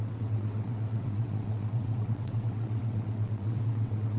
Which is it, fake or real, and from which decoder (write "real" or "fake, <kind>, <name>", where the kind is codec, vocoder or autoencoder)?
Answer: fake, vocoder, WaveNeXt